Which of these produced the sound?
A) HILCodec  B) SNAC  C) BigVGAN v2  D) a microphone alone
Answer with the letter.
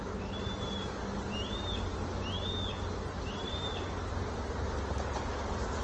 D